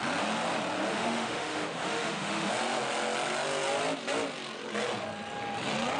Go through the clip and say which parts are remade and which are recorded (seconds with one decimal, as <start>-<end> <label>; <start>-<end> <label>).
0.0-0.9 recorded; 0.9-2.5 remade; 2.5-6.0 recorded